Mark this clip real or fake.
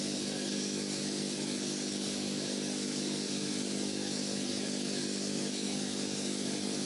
fake